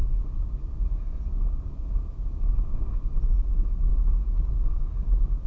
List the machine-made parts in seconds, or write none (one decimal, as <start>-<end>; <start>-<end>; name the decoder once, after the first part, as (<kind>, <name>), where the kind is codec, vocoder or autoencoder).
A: 3.9-4.5 (vocoder, Vocos)